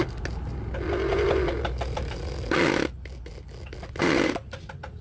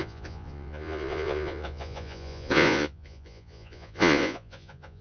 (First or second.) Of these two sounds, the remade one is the second